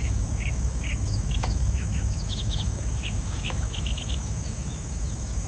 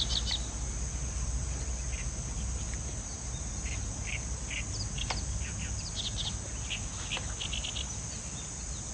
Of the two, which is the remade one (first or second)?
first